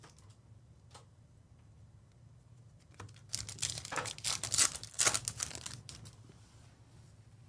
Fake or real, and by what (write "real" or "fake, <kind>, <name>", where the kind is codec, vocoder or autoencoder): real